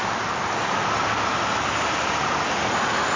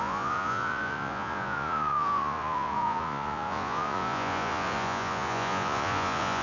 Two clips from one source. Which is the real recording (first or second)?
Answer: first